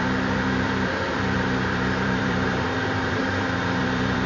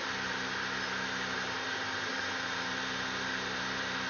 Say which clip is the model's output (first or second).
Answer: first